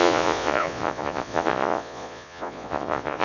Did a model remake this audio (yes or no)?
yes